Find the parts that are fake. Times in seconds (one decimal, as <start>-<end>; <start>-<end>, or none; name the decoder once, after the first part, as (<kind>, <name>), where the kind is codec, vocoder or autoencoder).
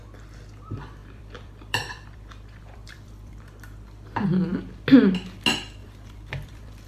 1.0-3.4 (vocoder, BigVGAN v2); 5.8-6.9